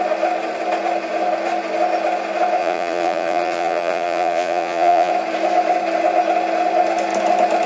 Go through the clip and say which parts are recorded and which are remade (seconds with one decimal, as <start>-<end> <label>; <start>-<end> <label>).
0.0-2.6 recorded; 2.6-5.1 remade; 5.1-7.7 recorded

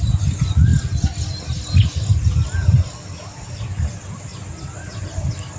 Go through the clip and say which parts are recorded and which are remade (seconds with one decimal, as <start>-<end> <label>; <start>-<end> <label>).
0.0-5.6 recorded

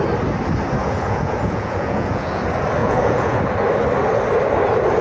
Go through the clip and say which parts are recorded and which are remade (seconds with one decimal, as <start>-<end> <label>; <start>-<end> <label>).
0.0-0.8 recorded; 0.8-2.4 remade; 2.4-2.8 recorded; 2.8-3.4 remade; 3.4-5.0 recorded

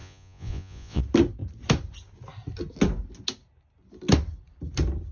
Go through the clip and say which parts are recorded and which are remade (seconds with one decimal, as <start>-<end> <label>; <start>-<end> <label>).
0.0-1.0 remade; 1.0-5.1 recorded

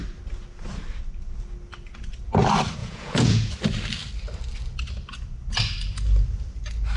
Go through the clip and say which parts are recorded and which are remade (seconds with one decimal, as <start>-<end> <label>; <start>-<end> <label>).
0.0-2.8 recorded; 2.8-3.5 remade; 3.5-7.0 recorded

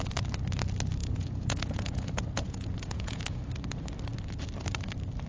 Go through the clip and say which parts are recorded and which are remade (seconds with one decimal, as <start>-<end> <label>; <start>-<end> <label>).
0.0-1.0 recorded; 1.0-3.4 remade; 3.4-5.3 recorded

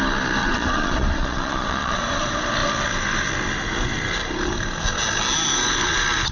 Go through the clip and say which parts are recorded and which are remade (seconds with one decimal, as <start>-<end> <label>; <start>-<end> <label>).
0.0-0.4 recorded; 0.4-2.0 remade; 2.0-6.3 recorded

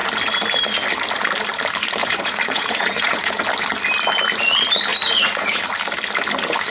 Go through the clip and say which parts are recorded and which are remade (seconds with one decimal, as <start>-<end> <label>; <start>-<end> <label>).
0.0-2.0 recorded; 2.0-3.4 remade; 3.4-4.9 recorded; 4.9-5.6 remade; 5.6-6.7 recorded